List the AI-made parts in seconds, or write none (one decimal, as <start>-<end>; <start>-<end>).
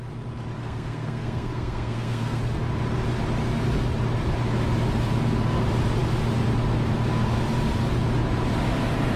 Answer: 0.6-2.4